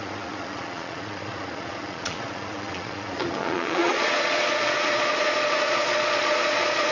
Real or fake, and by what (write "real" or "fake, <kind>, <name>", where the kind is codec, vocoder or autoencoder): fake, vocoder, Vocos